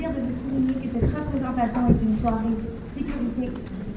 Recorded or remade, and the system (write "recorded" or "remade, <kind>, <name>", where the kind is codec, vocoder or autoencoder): recorded